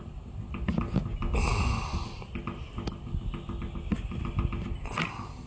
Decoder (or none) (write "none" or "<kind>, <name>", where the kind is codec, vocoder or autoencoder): none